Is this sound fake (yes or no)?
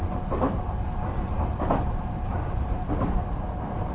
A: no